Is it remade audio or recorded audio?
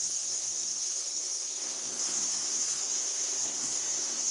remade